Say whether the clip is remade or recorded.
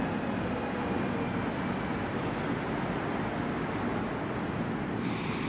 recorded